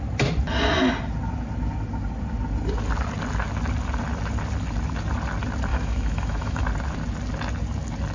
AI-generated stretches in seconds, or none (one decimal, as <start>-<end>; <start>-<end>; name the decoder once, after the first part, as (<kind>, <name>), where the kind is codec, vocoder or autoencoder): 5.7-6.6 (autoencoder, DAC-VAE)